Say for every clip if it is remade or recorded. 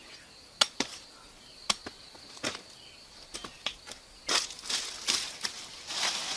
recorded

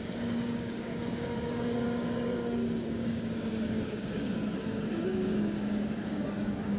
remade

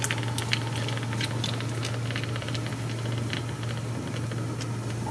recorded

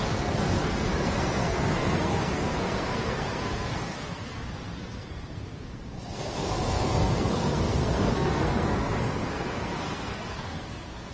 remade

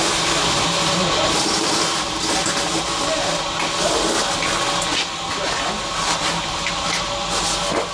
recorded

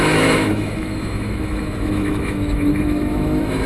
remade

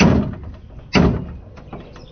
recorded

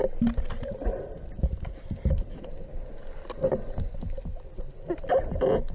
recorded